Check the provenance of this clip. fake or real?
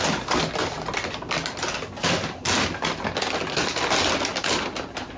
real